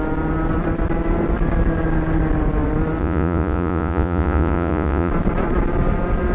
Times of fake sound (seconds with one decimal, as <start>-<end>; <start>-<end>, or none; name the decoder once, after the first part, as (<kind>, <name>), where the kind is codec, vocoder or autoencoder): 3.0-5.1 (vocoder, Vocos)